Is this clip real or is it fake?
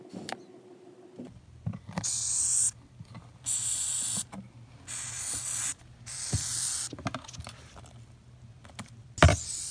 real